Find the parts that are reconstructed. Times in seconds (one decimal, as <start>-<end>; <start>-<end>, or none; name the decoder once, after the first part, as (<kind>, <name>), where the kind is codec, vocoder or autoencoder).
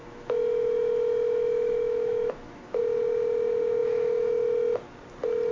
0.0-2.8 (autoencoder, DAC-VAE)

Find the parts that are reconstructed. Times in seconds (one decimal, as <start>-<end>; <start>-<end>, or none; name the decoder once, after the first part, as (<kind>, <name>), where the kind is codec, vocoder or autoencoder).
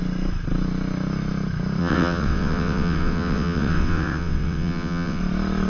1.8-5.2 (vocoder, WaveNeXt)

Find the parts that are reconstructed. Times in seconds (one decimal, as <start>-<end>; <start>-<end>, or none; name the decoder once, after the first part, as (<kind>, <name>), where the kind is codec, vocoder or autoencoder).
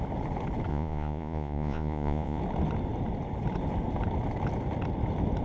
0.7-2.4 (vocoder, Vocos)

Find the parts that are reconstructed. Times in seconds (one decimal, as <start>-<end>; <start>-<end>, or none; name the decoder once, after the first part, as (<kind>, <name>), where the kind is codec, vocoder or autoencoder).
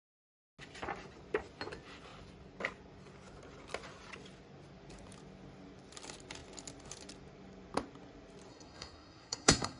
8.5-9.8 (codec, SNAC)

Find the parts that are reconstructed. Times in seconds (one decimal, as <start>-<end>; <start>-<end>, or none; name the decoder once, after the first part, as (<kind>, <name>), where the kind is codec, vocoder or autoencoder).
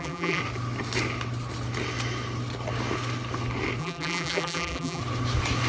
0.0-0.4 (vocoder, BigVGAN v2); 3.8-5.0